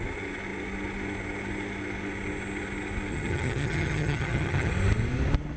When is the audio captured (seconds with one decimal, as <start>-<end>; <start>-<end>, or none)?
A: 0.0-3.1; 4.7-5.6